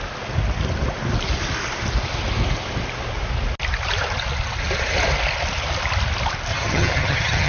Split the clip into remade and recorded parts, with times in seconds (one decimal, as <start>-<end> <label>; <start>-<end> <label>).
0.0-6.5 recorded; 6.5-7.5 remade